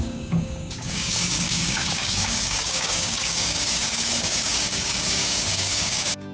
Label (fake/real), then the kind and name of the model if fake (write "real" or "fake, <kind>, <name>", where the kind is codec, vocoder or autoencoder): fake, codec, DAC